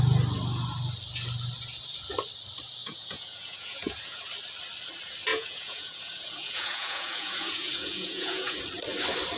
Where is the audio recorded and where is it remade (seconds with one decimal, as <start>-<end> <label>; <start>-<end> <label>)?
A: 0.0-2.8 recorded; 2.8-4.2 remade; 4.2-5.3 recorded; 5.3-8.6 remade; 8.6-9.4 recorded